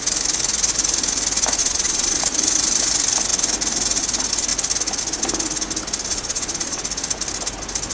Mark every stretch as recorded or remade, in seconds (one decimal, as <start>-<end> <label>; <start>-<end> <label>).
0.0-1.6 recorded; 1.6-2.2 remade; 2.2-6.1 recorded; 6.1-6.8 remade; 6.8-7.9 recorded